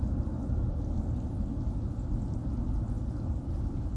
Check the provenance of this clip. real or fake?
real